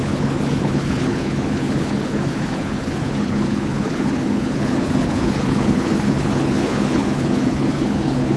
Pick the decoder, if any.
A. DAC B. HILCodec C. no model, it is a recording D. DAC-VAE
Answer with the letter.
B